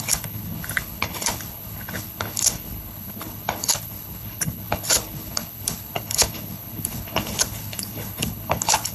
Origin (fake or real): fake